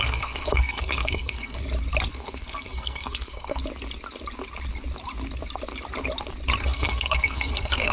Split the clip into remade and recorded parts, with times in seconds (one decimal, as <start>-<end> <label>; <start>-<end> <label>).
0.0-1.6 remade; 1.6-2.1 recorded; 2.1-3.6 remade; 3.6-6.6 recorded; 6.6-7.9 remade

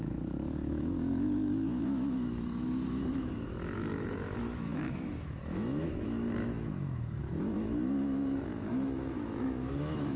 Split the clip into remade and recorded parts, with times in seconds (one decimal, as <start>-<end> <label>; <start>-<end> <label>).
0.0-10.2 remade